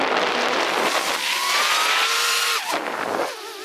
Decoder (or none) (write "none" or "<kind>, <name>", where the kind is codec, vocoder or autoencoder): vocoder, BigVGAN v2